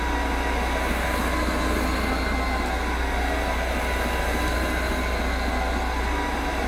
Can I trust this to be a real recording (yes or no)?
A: yes